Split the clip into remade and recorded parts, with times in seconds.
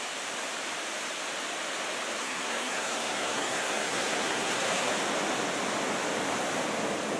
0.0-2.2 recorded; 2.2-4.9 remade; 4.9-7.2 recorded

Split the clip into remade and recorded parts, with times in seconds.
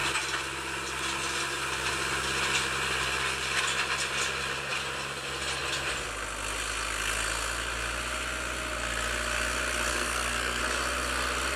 0.0-9.9 recorded; 9.9-10.6 remade; 10.6-11.6 recorded